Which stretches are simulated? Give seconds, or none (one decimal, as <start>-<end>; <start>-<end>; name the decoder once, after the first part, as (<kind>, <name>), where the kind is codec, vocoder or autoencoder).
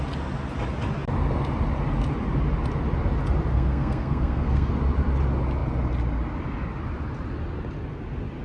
3.5-4.7 (codec, SNAC)